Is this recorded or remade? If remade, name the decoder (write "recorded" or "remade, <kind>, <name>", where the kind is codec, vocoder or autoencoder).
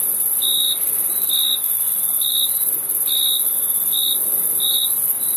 recorded